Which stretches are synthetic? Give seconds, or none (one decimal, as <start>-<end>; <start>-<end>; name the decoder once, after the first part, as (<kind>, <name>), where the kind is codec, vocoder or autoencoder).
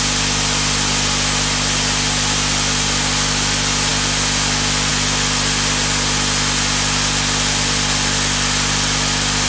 none